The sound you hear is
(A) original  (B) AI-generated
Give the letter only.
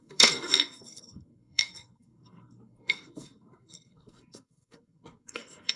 B